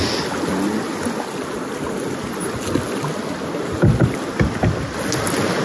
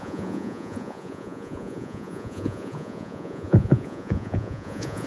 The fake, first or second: second